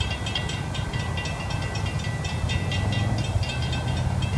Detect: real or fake real